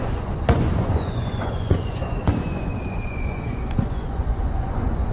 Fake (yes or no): yes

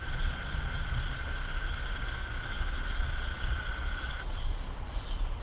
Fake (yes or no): yes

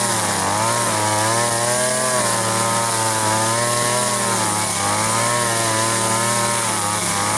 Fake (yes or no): no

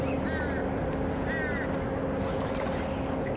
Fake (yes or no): no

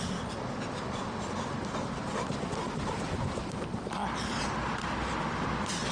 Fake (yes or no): no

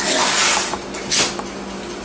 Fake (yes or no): no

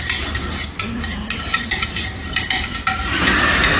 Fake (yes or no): yes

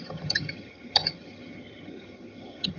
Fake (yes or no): yes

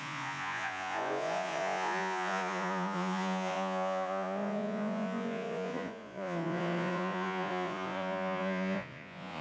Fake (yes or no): yes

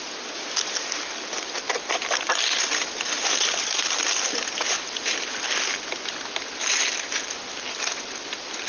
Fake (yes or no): no